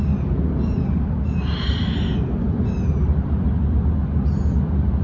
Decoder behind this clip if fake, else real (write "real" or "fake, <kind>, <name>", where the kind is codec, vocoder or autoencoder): real